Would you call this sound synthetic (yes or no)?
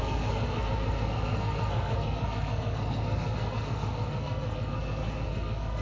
yes